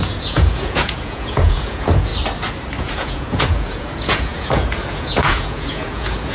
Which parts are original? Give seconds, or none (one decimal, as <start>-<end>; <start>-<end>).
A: 2.1-2.8